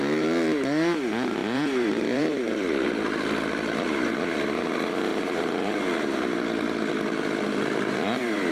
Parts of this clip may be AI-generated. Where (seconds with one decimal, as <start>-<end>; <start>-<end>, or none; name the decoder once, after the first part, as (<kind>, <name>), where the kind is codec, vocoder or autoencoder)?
1.4-4.6 (vocoder, BigVGAN v2); 5.1-8.5